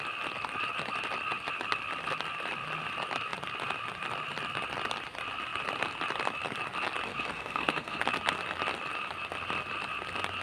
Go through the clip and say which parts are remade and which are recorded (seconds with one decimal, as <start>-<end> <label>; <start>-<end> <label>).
0.0-7.1 recorded; 7.1-8.0 remade; 8.0-10.4 recorded

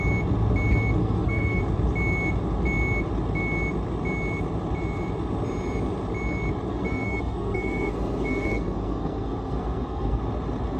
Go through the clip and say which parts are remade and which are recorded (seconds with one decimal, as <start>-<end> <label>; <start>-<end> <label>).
0.0-1.0 recorded; 1.0-1.6 remade; 1.6-6.7 recorded; 6.7-10.2 remade; 10.2-10.8 recorded

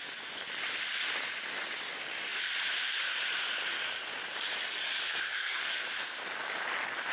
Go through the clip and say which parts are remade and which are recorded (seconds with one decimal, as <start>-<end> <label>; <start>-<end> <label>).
0.0-5.0 recorded; 5.0-5.7 remade; 5.7-7.1 recorded

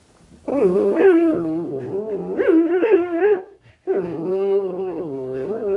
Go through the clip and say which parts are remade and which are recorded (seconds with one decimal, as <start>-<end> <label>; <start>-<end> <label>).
0.0-0.5 recorded; 0.5-1.8 remade; 1.8-2.7 recorded; 2.7-3.7 remade; 3.7-4.3 recorded; 4.3-5.8 remade

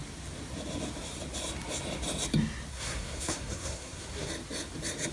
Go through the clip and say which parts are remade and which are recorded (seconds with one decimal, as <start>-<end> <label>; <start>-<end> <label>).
0.0-2.7 recorded; 2.7-4.3 remade; 4.3-5.1 recorded

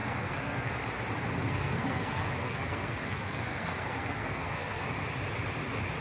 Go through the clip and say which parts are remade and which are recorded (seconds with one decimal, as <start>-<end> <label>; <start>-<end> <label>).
0.0-0.7 remade; 0.7-1.4 recorded; 1.4-5.0 remade; 5.0-6.0 recorded

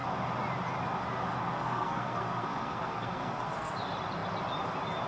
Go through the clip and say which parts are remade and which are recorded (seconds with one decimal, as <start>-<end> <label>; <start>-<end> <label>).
0.0-1.4 recorded; 1.4-3.7 remade; 3.7-5.1 recorded